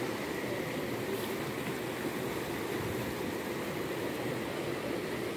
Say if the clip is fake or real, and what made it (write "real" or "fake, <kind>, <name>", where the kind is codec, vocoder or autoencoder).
real